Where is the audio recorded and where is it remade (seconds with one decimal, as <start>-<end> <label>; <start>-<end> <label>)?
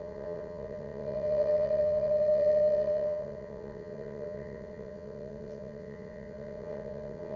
0.0-7.4 remade